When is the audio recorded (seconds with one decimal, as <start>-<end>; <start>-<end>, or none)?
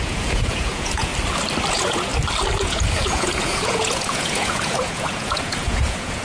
1.1-1.7; 2.1-2.6